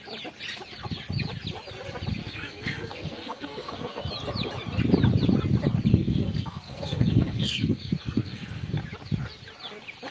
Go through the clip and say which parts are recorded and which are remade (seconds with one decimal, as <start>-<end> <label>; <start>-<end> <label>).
0.0-2.2 recorded; 2.2-4.0 remade; 4.0-5.9 recorded; 5.9-8.8 remade; 8.8-10.1 recorded